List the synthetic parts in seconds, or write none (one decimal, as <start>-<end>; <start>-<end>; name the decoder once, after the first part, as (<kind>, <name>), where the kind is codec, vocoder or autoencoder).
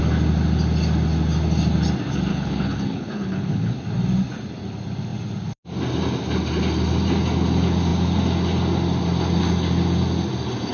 2.3-3.7 (codec, HILCodec)